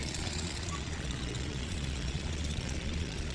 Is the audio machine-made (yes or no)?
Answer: yes